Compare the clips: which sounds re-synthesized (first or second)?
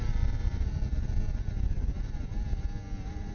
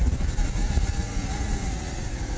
second